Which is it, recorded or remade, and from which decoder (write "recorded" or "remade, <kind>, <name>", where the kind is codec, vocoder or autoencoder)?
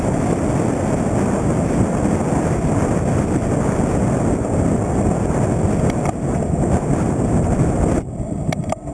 recorded